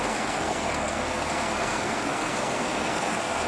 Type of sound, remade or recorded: remade